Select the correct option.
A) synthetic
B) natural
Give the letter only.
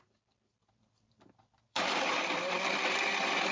A